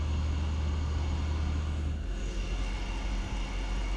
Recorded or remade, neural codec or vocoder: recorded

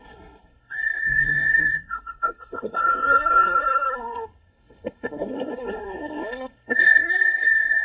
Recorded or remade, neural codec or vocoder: remade, codec, SNAC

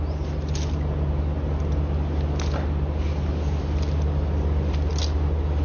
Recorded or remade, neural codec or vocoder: recorded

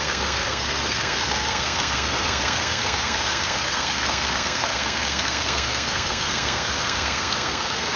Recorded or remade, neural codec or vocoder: remade, codec, SNAC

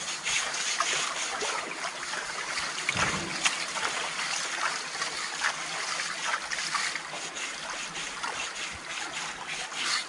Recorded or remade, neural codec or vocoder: recorded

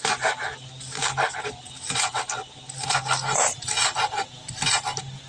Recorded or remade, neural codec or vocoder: recorded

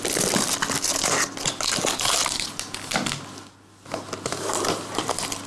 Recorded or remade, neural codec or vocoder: recorded